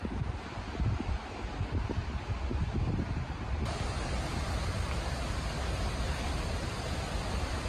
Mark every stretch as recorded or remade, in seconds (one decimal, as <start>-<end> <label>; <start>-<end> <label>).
0.0-7.7 recorded